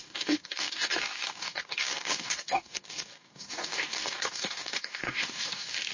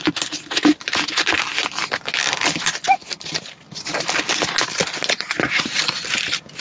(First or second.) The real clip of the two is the second